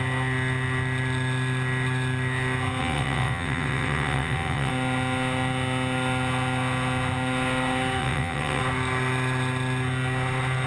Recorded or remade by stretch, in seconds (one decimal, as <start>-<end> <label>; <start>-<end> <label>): 0.0-2.8 recorded; 2.8-4.7 remade; 4.7-8.0 recorded; 8.0-8.6 remade; 8.6-10.7 recorded